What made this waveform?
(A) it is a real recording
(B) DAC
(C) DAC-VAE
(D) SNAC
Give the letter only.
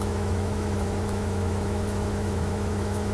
C